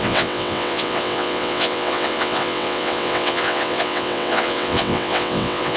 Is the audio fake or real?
fake